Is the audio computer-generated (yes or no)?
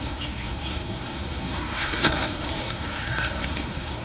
yes